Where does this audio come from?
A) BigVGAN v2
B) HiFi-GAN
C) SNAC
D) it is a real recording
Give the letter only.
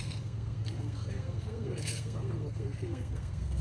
C